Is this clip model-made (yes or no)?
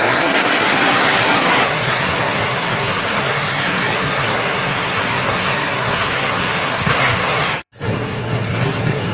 yes